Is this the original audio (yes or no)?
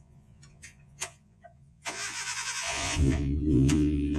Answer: no